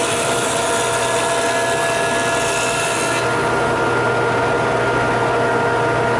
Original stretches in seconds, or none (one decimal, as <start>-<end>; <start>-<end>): 0.6-6.2